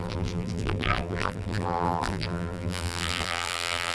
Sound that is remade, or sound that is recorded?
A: remade